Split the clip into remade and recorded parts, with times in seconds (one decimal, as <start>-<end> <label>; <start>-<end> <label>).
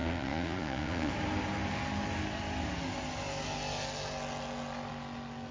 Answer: 0.0-1.1 remade; 1.1-5.5 recorded